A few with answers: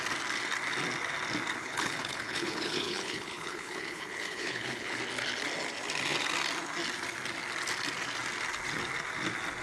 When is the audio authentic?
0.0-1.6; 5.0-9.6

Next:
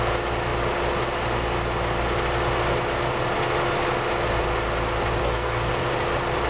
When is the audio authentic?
0.0-5.2; 5.7-6.5

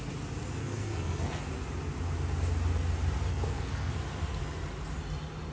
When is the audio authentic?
0.0-0.6; 1.4-3.3; 3.9-5.5

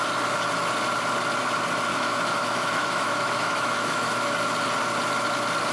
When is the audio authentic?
0.0-1.9; 4.4-5.7

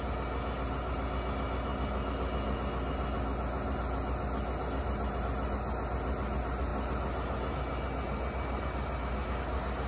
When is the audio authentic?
0.0-9.9

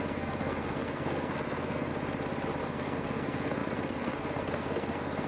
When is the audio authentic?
1.9-2.6

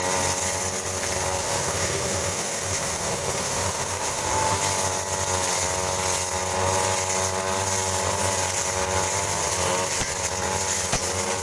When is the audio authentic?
0.0-1.4; 4.6-11.4